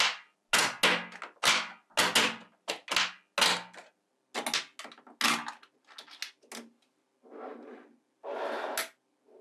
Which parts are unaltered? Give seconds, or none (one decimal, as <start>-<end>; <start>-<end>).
0.0-9.4